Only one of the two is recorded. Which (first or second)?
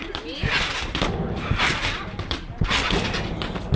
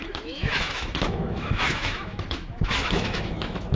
first